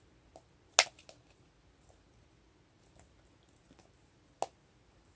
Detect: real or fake real